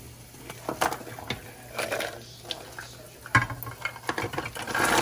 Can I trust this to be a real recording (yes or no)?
yes